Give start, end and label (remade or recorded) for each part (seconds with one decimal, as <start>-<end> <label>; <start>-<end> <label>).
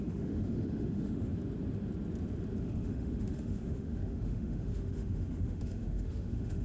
0.0-1.3 remade; 1.3-2.6 recorded; 2.6-6.6 remade